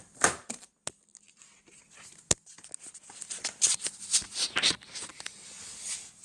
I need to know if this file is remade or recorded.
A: recorded